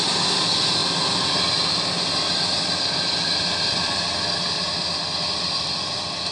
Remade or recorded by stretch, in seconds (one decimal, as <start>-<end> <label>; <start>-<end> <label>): 0.0-6.3 recorded